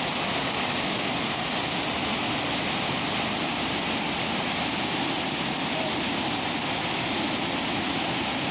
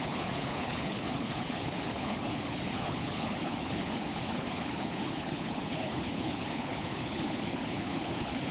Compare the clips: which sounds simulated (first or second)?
second